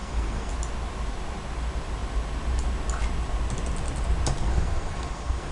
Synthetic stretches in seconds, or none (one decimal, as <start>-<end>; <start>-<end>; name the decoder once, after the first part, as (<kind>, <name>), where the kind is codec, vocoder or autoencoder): 0.0-0.5 (codec, SNAC); 4.4-5.5